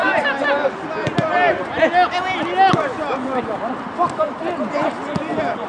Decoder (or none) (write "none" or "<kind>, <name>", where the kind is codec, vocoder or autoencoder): none